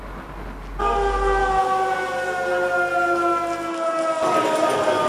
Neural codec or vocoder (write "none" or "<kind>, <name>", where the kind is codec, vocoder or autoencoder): none